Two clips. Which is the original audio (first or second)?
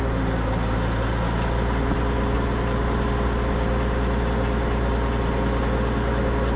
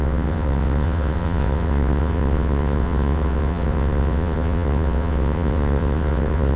first